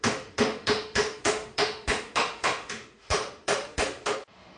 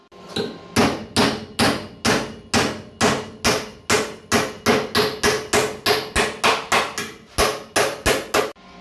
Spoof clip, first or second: first